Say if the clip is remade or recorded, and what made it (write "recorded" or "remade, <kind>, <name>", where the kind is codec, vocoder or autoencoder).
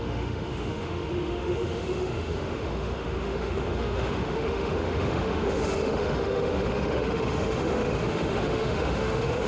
remade, autoencoder, DAC-VAE